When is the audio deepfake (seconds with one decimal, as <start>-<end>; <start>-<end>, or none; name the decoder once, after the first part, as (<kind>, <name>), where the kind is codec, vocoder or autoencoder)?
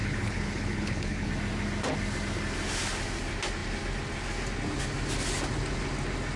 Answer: 0.0-1.3 (codec, HILCodec)